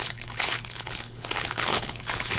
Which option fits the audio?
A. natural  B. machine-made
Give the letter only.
B